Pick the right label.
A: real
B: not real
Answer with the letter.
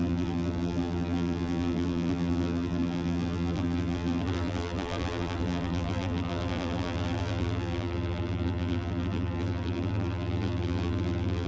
B